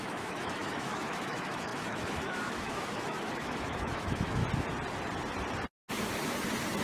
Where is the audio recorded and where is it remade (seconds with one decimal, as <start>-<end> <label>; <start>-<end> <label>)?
0.0-4.4 remade; 4.4-6.8 recorded